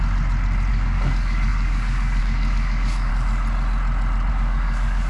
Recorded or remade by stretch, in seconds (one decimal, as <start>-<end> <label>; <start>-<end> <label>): 0.0-0.7 recorded; 0.7-3.1 remade; 3.1-4.3 recorded; 4.3-5.1 remade